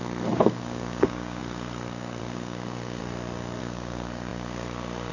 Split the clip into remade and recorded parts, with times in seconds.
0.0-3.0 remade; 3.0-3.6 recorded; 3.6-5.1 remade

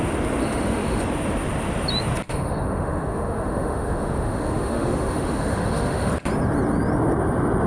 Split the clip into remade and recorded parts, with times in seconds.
0.0-0.4 recorded; 0.4-1.0 remade; 1.0-2.3 recorded; 2.3-6.1 remade; 6.1-7.7 recorded

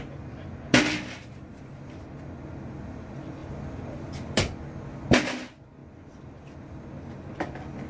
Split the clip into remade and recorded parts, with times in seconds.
0.0-3.4 recorded; 3.4-4.3 remade; 4.3-7.9 recorded

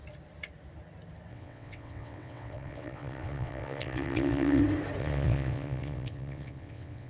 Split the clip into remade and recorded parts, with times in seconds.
0.0-1.3 recorded; 1.3-4.6 remade; 4.6-5.0 recorded; 5.0-7.1 remade

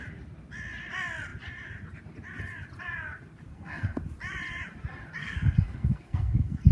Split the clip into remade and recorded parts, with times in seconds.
0.0-3.5 recorded; 3.5-4.0 remade; 4.0-5.2 recorded; 5.2-6.7 remade